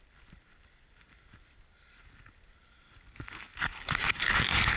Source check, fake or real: real